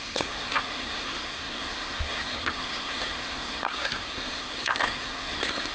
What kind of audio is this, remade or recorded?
remade